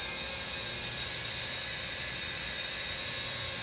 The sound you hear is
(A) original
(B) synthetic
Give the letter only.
B